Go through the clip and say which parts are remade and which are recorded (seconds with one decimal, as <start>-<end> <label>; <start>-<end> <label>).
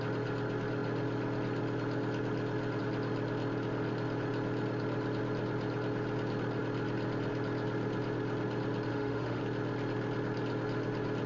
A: 0.0-8.9 recorded; 8.9-9.4 remade; 9.4-11.3 recorded